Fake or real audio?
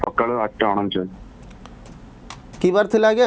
real